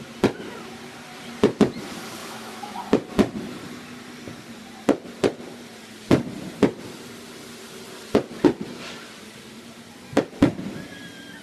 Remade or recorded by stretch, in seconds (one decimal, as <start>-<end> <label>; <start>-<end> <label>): 0.0-2.2 recorded; 2.2-2.8 remade; 2.8-11.4 recorded